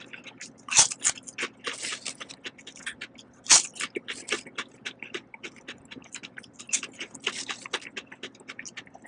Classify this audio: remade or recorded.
recorded